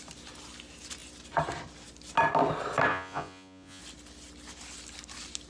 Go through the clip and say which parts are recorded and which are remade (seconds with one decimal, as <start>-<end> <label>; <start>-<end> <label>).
0.0-2.9 recorded; 2.9-3.8 remade; 3.8-5.5 recorded

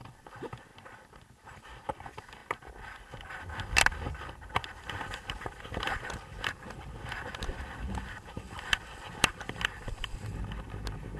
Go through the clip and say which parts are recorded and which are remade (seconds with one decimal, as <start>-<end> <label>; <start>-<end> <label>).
0.0-0.7 remade; 0.7-2.0 recorded; 2.0-11.2 remade

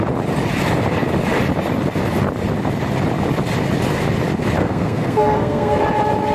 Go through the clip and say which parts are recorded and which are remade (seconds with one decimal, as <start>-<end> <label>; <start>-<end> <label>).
0.0-4.6 recorded; 4.6-5.8 remade; 5.8-6.3 recorded

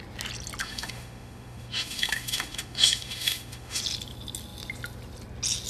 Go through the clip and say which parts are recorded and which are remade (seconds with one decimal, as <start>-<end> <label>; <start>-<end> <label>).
0.0-0.6 recorded; 0.6-3.8 remade; 3.8-5.7 recorded

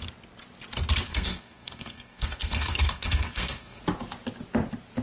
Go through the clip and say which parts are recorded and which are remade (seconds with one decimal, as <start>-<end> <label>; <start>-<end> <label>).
0.0-1.1 recorded; 1.1-3.8 remade; 3.8-5.0 recorded